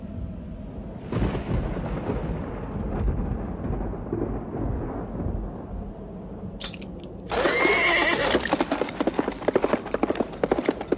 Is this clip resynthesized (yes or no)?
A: no